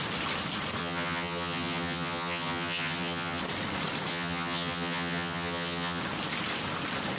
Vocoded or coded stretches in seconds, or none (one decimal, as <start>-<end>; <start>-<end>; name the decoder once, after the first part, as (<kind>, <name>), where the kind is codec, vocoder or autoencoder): 0.8-3.4 (vocoder, HiFi-GAN); 4.1-6.0